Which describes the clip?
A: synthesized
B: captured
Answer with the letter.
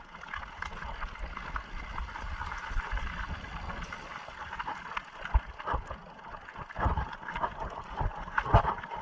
B